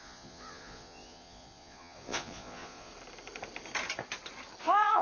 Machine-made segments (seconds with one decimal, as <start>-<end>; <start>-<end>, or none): 0.0-2.9; 4.6-5.0